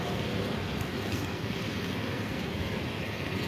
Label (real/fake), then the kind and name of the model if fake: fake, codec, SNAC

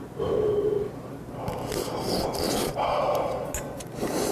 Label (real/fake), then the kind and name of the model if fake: real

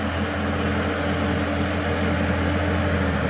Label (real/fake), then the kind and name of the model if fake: real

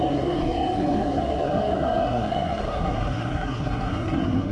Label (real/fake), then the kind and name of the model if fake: fake, codec, SNAC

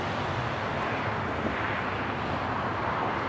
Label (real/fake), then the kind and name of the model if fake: real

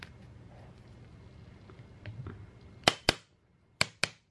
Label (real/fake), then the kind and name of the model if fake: real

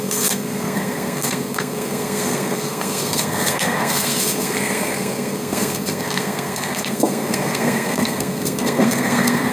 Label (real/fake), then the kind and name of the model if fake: fake, codec, SNAC